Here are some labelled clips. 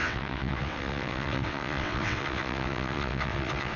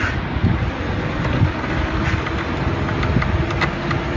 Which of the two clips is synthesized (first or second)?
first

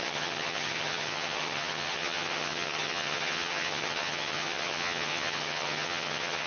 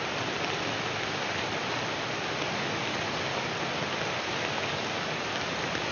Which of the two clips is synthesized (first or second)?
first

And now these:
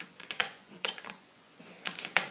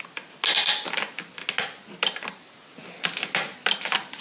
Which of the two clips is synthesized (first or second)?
first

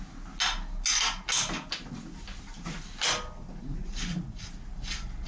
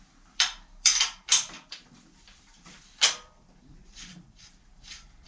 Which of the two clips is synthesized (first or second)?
second